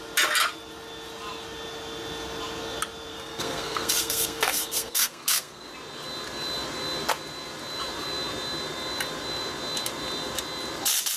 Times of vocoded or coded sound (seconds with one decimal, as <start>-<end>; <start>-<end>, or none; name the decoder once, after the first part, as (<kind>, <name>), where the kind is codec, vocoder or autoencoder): 3.1-5.7 (codec, SNAC)